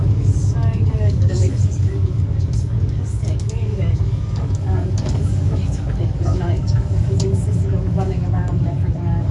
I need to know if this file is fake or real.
fake